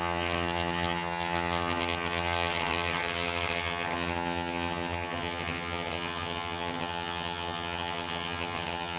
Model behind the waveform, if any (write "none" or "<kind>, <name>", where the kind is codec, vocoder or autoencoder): vocoder, HiFi-GAN